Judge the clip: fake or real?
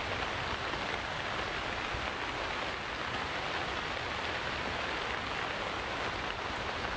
real